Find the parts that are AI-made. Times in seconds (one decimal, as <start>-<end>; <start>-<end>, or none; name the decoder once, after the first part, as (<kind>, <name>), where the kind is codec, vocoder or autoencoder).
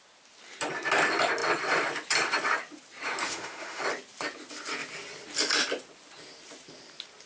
3.2-3.8 (autoencoder, DAC-VAE)